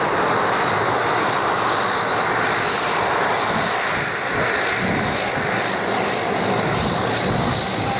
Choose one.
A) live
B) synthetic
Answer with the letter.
A